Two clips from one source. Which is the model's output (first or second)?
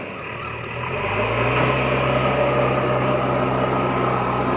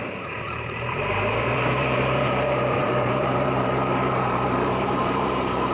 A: second